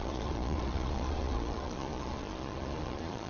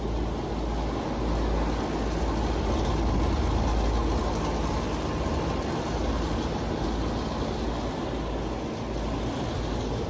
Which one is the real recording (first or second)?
second